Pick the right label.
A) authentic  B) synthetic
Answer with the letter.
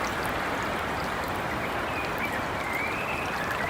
A